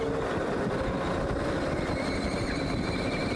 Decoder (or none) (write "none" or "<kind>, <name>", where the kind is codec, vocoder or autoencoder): none